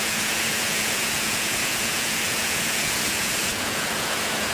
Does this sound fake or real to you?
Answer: fake